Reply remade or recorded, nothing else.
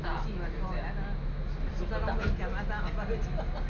recorded